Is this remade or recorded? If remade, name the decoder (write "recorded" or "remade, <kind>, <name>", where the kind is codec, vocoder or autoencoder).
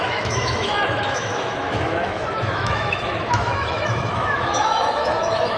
remade, autoencoder, DAC-VAE